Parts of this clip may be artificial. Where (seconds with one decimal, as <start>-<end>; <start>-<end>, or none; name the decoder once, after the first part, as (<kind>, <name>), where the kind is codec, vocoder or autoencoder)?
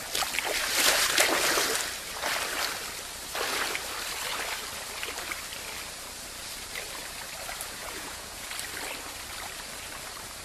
7.8-8.5 (vocoder, Vocos)